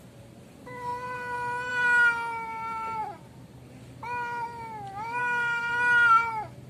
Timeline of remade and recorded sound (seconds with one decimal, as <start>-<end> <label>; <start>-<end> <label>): 0.0-5.2 recorded; 5.2-5.7 remade; 5.7-6.7 recorded